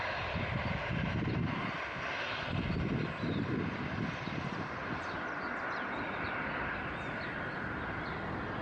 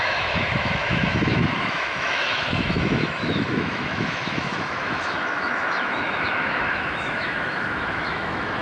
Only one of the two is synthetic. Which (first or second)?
second